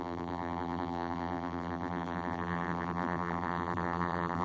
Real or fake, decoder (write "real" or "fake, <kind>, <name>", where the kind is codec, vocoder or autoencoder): fake, vocoder, BigVGAN v2